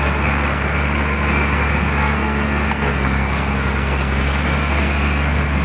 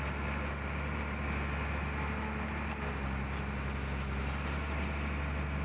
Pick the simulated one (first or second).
first